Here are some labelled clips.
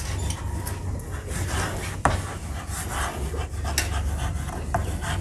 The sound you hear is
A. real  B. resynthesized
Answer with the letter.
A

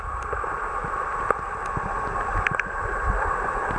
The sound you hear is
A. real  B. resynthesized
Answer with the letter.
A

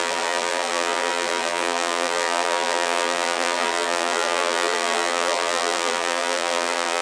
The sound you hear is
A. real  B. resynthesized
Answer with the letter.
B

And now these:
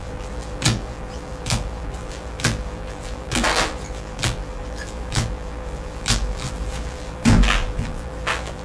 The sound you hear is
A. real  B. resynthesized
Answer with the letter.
B